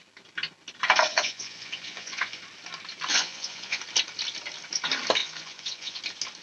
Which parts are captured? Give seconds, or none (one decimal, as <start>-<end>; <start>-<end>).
0.0-1.1; 2.4-3.1; 3.8-5.2; 6.0-6.4